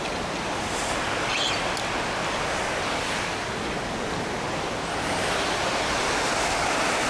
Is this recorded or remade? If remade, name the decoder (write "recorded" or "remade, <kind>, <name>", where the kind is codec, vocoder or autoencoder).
recorded